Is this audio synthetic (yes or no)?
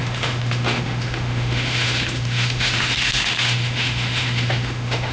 yes